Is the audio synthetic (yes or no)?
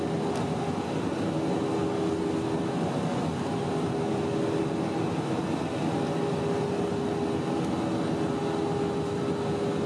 no